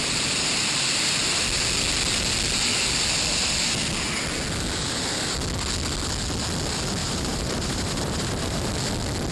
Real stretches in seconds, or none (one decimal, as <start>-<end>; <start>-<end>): 0.0-7.0; 8.7-9.3

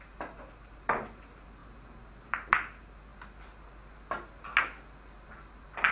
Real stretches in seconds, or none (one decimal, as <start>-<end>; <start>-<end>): 1.6-2.3; 3.1-5.2

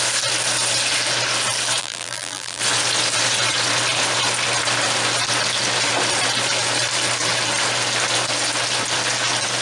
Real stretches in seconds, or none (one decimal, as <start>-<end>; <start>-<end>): 0.0-1.8; 2.6-9.6

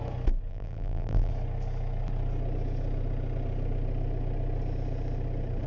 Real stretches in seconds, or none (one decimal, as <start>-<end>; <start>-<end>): 0.0-0.5; 1.3-5.7

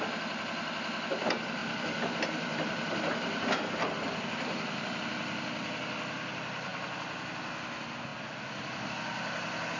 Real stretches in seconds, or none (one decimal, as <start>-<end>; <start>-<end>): 0.0-1.6; 5.0-9.8

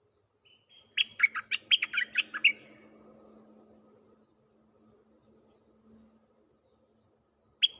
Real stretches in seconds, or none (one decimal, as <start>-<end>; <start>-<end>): 0.0-7.8